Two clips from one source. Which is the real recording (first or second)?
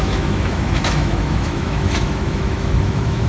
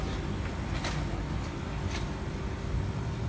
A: second